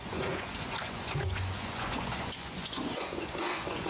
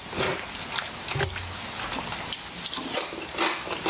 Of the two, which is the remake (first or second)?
first